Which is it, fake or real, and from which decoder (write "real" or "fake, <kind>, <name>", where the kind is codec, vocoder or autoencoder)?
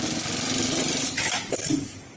real